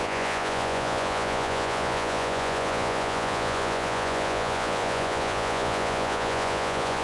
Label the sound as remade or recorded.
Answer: remade